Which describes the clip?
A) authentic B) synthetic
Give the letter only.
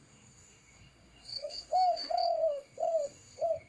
B